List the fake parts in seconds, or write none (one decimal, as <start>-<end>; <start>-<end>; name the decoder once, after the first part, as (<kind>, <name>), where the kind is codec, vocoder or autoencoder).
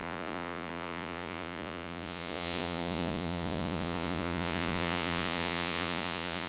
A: 0.0-6.5 (vocoder, Vocos)